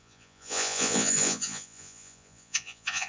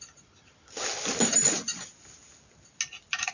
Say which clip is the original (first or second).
second